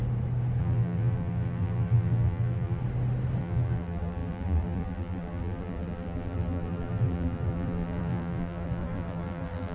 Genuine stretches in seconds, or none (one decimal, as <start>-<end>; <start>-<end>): 0.0-0.6; 2.8-3.4

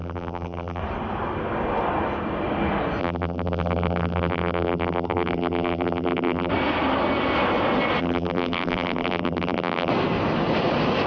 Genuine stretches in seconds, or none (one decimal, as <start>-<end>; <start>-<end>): 0.8-3.0; 6.5-8.0; 9.9-11.1

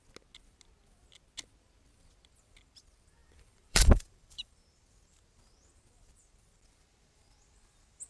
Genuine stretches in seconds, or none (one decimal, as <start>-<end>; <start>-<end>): 0.0-3.2; 4.5-8.1